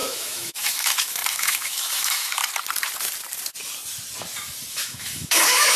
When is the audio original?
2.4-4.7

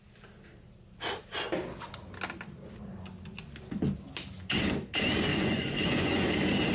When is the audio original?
0.0-5.3; 6.3-6.7

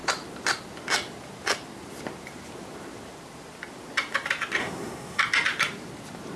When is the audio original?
0.0-4.6; 5.2-6.4

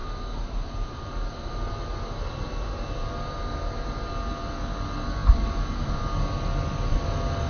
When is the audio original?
4.1-7.5

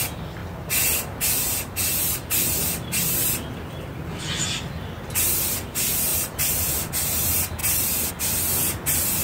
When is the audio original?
0.0-6.1; 6.9-7.6; 8.1-9.2

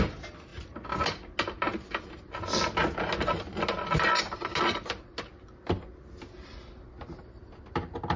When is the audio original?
0.0-8.2

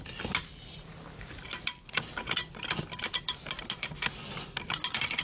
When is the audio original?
0.0-5.2

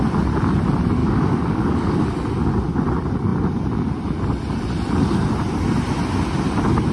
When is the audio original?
0.0-1.0; 2.0-6.9